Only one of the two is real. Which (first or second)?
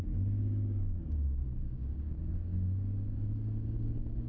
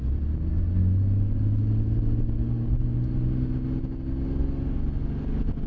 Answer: second